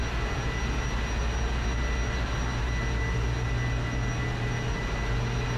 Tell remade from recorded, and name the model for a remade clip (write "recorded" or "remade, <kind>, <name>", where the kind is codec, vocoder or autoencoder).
recorded